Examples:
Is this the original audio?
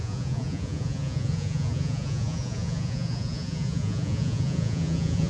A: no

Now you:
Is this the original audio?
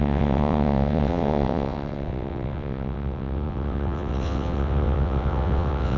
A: no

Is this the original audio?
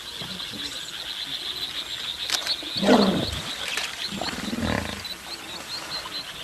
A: yes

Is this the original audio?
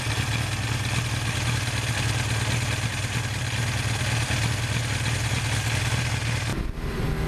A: yes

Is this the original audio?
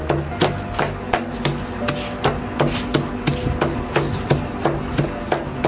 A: yes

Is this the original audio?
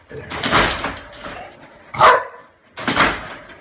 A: yes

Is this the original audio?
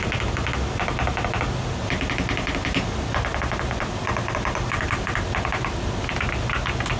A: yes